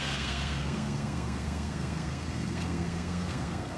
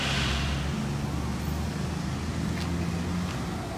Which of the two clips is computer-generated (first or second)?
first